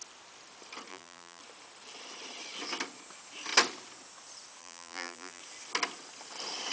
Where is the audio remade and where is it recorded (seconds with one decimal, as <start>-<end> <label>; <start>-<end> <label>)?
0.0-0.9 recorded; 0.9-1.4 remade; 1.4-4.6 recorded; 4.6-5.4 remade; 5.4-6.7 recorded